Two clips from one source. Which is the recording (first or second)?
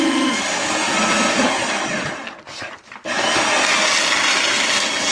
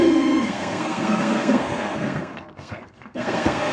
first